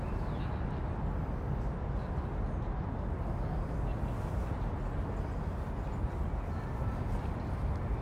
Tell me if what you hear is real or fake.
real